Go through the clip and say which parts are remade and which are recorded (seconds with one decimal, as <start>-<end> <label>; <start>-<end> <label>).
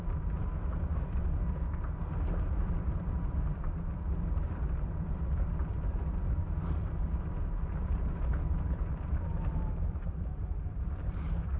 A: 0.0-0.4 remade; 0.4-2.5 recorded; 2.5-11.6 remade